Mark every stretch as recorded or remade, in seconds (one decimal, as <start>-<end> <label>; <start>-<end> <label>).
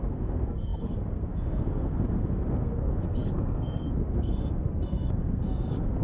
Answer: 0.0-6.0 remade